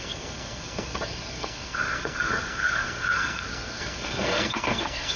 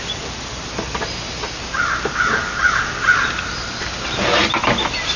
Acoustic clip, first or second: second